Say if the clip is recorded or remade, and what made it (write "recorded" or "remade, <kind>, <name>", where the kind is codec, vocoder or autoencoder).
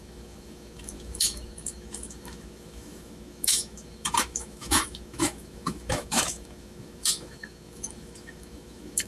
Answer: remade, autoencoder, DAC-VAE